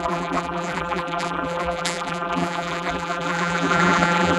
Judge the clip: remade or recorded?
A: remade